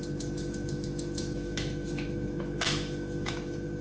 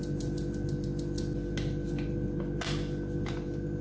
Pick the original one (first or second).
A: second